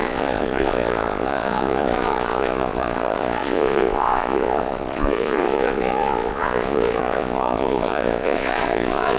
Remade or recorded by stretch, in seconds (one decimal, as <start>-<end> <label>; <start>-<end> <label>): 0.0-9.2 remade